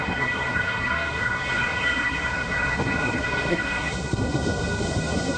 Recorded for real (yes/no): no